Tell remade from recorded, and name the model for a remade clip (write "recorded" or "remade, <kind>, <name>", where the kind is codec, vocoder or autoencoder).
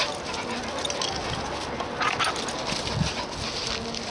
recorded